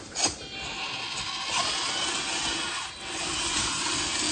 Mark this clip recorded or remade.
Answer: recorded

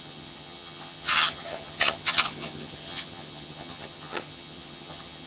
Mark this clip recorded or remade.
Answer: remade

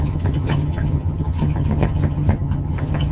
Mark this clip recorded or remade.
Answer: remade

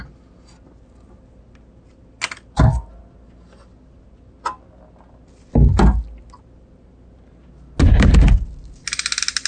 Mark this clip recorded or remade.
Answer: recorded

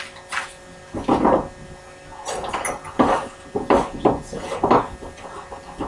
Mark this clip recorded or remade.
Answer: recorded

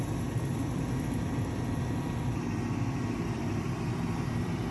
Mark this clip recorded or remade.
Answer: remade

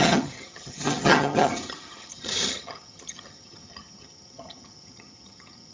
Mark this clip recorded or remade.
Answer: remade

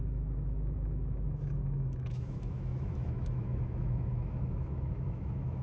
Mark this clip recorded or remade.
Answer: remade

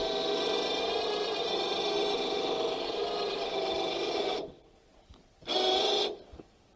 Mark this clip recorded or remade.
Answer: recorded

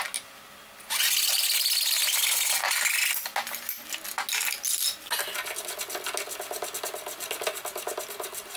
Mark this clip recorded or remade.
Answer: recorded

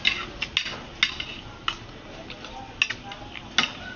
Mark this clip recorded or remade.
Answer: recorded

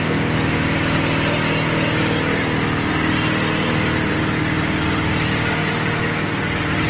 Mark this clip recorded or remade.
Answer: recorded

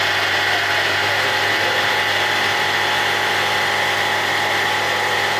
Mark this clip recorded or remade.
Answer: recorded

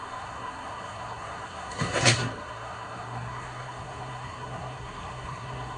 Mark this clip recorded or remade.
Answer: remade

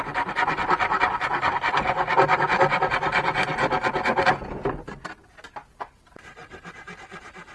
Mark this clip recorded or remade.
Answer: recorded